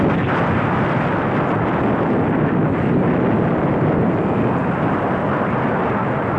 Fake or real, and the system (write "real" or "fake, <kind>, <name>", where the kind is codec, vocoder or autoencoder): real